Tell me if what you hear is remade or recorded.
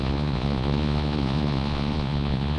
remade